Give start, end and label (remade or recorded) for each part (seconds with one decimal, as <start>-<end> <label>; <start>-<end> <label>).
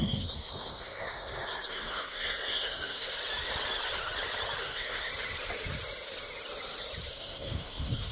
0.0-3.2 remade; 3.2-4.6 recorded; 4.6-5.1 remade; 5.1-7.1 recorded; 7.1-8.1 remade